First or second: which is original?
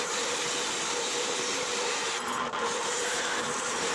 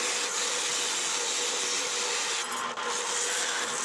second